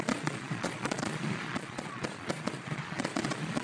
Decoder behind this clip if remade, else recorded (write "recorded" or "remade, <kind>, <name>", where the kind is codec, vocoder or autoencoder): remade, vocoder, Vocos